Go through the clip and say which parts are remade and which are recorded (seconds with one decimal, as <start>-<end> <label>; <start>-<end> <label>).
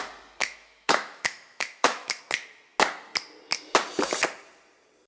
0.0-0.4 recorded; 0.4-2.2 remade; 2.2-5.1 recorded